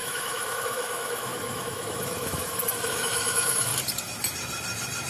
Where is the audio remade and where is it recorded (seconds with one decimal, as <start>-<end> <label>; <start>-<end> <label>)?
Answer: 0.0-3.7 remade; 3.7-5.1 recorded

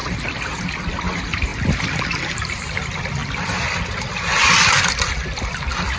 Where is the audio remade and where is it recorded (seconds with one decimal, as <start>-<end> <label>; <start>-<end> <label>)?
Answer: 0.0-6.0 recorded

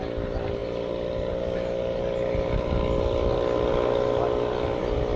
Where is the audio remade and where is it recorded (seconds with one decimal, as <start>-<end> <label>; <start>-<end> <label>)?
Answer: 0.0-5.2 recorded